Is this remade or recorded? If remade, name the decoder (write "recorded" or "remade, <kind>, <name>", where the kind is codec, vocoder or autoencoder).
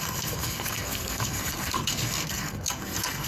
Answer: remade, codec, SNAC